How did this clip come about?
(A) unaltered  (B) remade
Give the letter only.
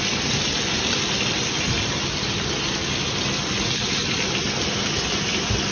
A